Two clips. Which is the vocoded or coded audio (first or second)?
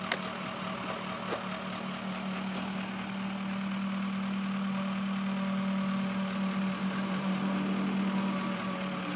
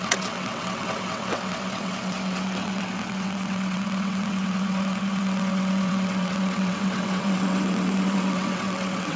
second